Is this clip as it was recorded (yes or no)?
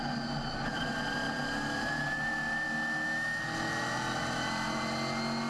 yes